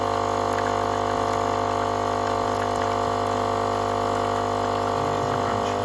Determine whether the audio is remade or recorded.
recorded